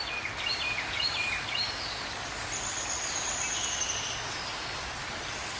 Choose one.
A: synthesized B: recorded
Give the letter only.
B